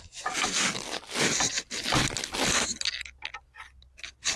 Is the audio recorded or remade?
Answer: recorded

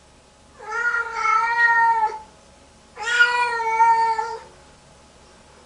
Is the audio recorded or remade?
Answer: recorded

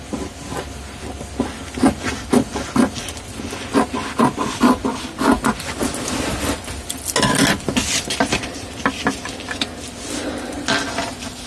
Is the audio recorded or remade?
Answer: recorded